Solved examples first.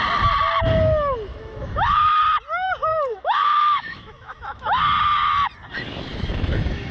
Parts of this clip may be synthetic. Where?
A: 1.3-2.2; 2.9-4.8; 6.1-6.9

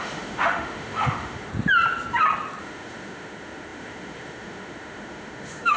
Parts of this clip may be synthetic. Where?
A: 0.0-1.5; 2.6-5.8

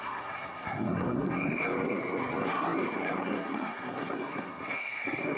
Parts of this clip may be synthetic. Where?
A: 0.0-5.4

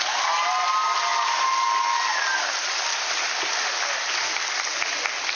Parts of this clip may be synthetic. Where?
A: none

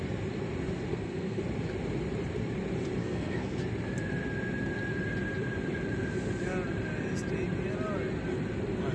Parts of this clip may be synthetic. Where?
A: 0.9-1.4; 3.0-3.6